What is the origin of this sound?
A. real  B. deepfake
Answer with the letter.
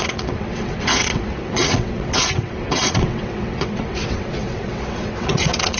B